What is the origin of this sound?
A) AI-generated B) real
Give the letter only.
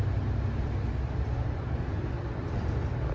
B